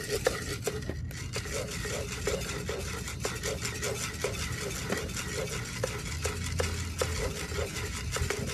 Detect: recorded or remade recorded